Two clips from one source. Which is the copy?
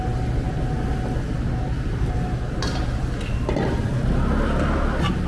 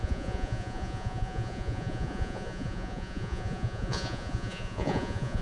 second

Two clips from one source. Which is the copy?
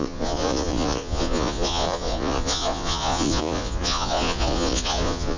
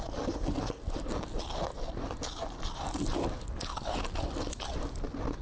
first